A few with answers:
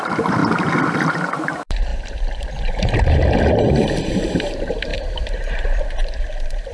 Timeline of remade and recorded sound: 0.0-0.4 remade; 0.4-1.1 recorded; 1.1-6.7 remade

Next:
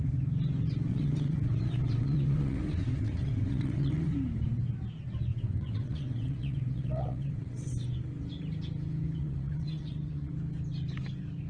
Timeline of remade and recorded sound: 0.0-0.9 recorded; 0.9-4.1 remade; 4.1-5.3 recorded; 5.3-7.7 remade; 7.7-9.2 recorded; 9.2-10.3 remade; 10.3-11.5 recorded

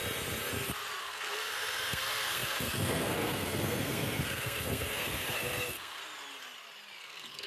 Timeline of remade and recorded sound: 0.0-1.0 recorded; 1.0-6.0 remade; 6.0-7.0 recorded; 7.0-7.5 remade

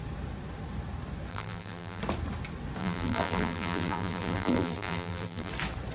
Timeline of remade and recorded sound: 0.0-1.3 recorded; 1.3-2.0 remade; 2.0-2.8 recorded; 2.8-5.5 remade; 5.5-5.9 recorded